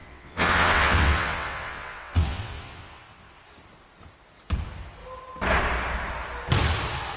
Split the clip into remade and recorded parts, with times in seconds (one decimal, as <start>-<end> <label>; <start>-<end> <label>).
0.0-3.3 remade; 3.3-7.2 recorded